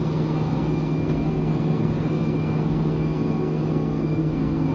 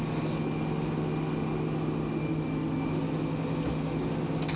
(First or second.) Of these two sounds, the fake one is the first